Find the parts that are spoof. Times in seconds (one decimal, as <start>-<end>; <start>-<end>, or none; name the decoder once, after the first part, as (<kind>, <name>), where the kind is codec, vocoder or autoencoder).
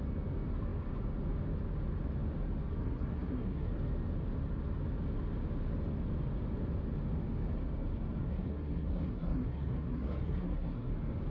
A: 2.8-3.7 (codec, SNAC); 8.2-10.9